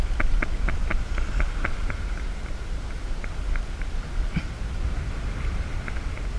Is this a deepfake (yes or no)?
no